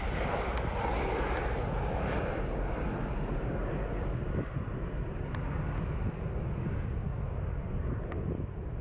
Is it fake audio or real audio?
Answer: real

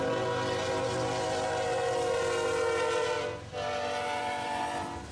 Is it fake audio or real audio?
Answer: real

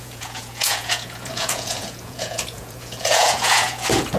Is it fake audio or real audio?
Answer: fake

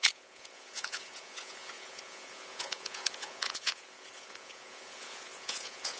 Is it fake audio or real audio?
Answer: fake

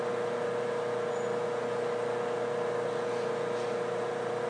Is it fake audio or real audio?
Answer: real